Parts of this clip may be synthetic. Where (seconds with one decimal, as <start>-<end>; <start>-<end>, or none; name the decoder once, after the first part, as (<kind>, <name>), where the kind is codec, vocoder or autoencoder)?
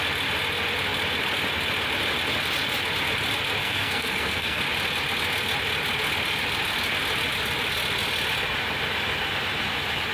3.6-4.6 (codec, SNAC)